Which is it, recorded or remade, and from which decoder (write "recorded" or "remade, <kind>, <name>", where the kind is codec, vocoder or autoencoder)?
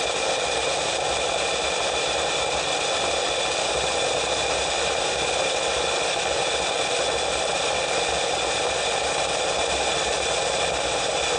recorded